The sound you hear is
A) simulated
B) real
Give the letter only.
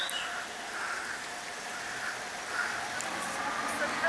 B